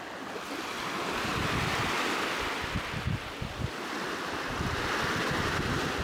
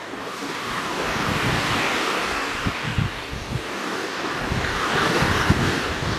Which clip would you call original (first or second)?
first